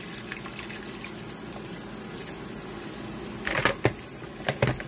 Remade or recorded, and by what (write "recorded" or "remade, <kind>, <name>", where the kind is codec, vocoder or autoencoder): recorded